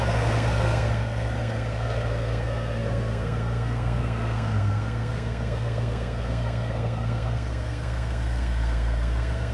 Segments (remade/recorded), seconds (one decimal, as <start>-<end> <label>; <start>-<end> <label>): 0.0-9.5 remade